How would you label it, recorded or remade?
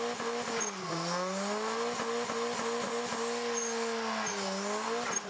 recorded